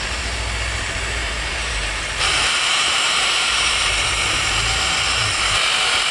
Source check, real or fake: fake